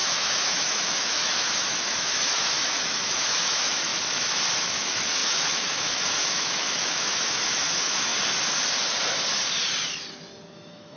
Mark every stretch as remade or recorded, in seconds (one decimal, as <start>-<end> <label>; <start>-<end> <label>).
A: 0.0-3.9 remade; 3.9-4.6 recorded; 4.6-8.1 remade; 8.1-10.5 recorded; 10.5-11.0 remade